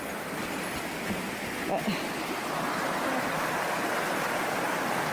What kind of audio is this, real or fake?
real